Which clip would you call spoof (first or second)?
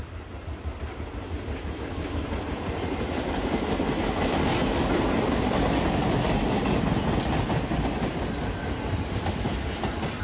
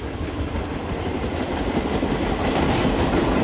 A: second